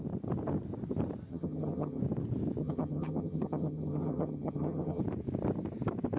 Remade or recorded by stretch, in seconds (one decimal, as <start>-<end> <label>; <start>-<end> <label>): 0.0-1.3 recorded; 1.3-2.0 remade; 2.0-2.6 recorded; 2.6-5.0 remade; 5.0-6.2 recorded